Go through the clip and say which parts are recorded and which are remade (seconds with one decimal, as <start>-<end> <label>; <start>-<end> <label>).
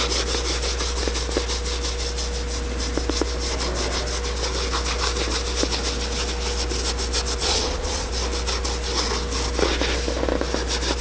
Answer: 0.0-7.4 recorded; 7.4-8.1 remade; 8.1-11.0 recorded